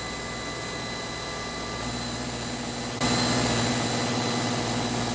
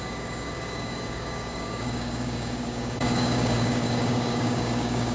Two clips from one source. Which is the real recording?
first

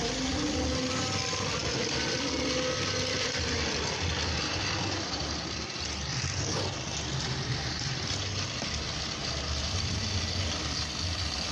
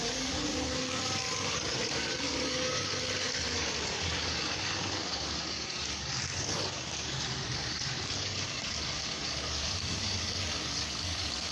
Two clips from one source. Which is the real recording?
first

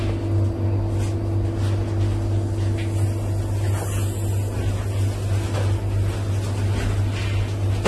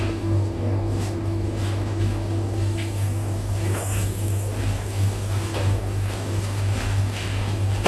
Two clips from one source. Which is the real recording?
first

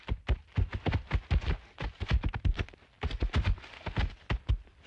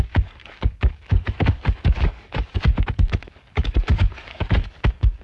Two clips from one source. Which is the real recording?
first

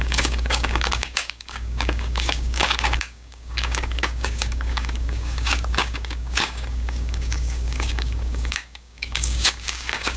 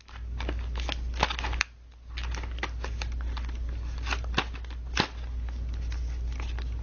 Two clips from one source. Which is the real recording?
second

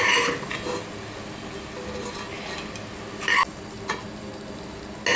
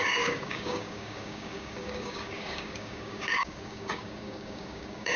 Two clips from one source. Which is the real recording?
first